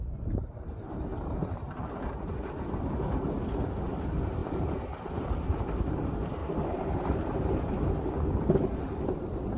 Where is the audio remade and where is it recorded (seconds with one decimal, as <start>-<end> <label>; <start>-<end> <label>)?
0.0-1.1 recorded; 1.1-1.8 remade; 1.8-6.4 recorded; 6.4-7.9 remade; 7.9-9.6 recorded